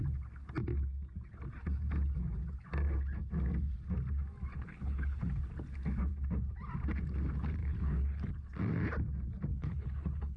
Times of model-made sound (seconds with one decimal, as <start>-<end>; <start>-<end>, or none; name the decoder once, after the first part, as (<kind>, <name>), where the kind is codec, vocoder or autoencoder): 4.5-5.4 (codec, HILCodec); 7.6-8.3; 9.5-10.4